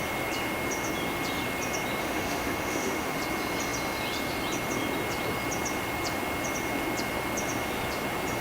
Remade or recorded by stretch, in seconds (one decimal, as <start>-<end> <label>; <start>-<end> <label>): 0.0-2.0 recorded; 2.0-3.2 remade; 3.2-8.4 recorded